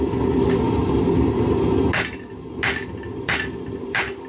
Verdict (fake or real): real